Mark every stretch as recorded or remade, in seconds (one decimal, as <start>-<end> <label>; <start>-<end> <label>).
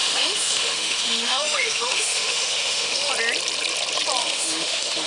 0.0-3.1 remade; 3.1-4.2 recorded; 4.2-5.1 remade